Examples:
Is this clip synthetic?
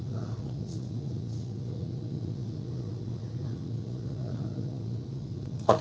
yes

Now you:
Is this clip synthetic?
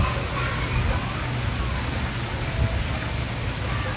no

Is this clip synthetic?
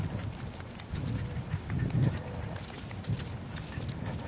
no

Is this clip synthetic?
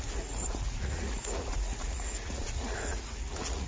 yes